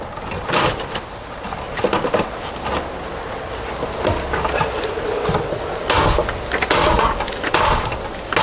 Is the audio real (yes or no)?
yes